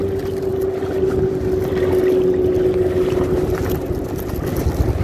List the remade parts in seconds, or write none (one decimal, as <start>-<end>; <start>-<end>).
none